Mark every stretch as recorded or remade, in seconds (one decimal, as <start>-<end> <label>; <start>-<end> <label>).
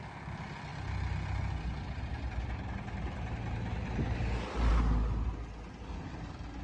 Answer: 0.0-6.6 recorded